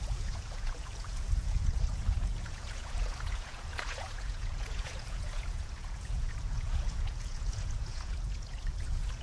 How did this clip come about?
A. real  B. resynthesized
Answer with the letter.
B